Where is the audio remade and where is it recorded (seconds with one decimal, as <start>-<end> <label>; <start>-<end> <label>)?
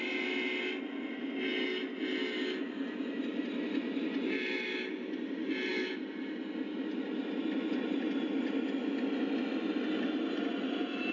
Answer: 0.0-11.1 recorded